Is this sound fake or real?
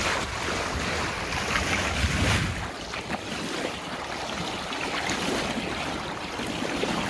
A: real